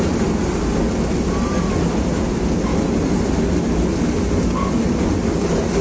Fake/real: real